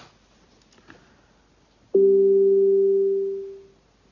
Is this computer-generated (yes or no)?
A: no